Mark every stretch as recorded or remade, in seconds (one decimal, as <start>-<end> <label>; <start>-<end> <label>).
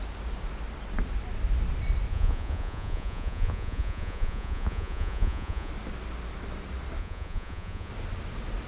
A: 0.0-2.1 recorded; 2.1-5.7 remade; 5.7-7.0 recorded; 7.0-7.9 remade; 7.9-8.7 recorded